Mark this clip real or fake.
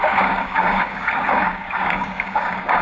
fake